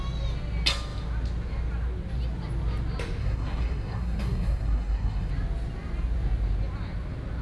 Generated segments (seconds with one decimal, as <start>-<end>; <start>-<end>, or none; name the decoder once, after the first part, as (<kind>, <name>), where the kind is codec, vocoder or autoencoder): 3.2-5.3 (codec, SNAC)